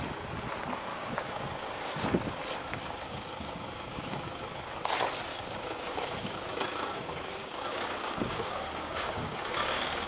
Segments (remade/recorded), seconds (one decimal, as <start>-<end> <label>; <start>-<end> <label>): 0.0-0.9 recorded; 0.9-2.2 remade; 2.2-2.7 recorded; 2.7-4.7 remade; 4.7-5.3 recorded; 5.3-10.1 remade